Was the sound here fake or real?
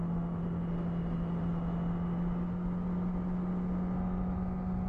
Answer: real